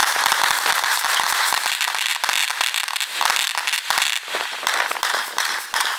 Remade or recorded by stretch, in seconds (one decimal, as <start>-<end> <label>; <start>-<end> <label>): 0.0-0.7 recorded; 0.7-2.1 remade; 2.1-5.0 recorded; 5.0-6.0 remade